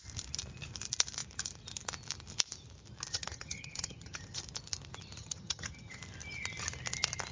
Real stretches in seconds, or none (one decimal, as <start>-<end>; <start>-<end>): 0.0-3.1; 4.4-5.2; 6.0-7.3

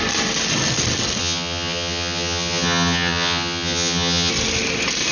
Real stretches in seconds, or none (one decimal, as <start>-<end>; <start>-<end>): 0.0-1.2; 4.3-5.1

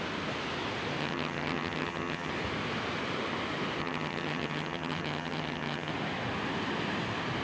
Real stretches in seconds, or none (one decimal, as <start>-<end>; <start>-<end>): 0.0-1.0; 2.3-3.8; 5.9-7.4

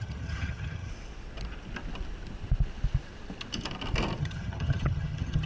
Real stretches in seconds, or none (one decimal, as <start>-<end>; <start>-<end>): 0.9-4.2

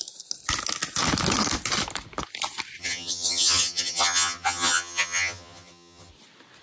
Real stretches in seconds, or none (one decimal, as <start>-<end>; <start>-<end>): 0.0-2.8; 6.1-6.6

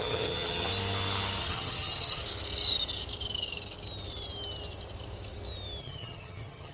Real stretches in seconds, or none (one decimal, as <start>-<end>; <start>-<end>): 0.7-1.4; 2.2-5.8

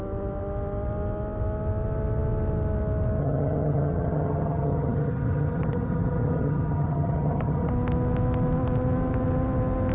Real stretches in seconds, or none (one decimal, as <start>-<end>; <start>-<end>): 0.0-3.2; 7.7-9.9